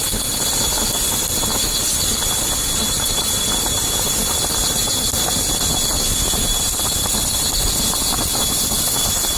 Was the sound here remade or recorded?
recorded